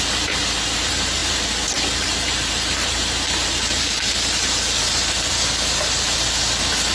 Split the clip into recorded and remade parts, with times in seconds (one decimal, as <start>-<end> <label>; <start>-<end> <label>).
0.0-6.9 recorded